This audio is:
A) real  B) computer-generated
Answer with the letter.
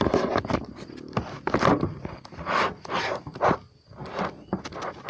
A